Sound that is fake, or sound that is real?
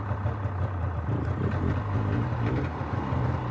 real